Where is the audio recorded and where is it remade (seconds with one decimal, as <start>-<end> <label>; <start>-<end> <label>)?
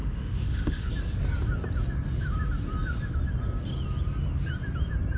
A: 0.0-0.9 remade; 0.9-5.2 recorded